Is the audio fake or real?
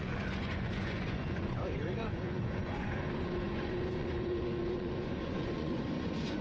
fake